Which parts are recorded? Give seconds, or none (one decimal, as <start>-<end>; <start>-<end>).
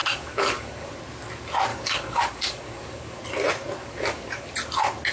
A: 0.9-1.7; 3.2-3.8; 4.5-5.1